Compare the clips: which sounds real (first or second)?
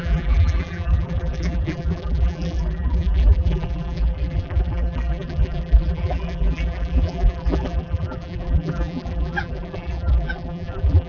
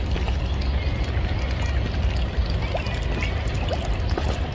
second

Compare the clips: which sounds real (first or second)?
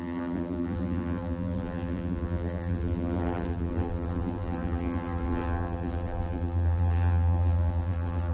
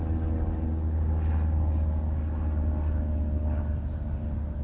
second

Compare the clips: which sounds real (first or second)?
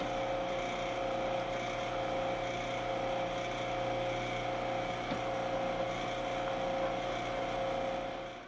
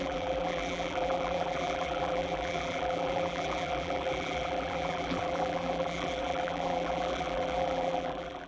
first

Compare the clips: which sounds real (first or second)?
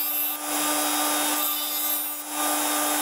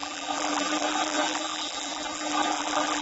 first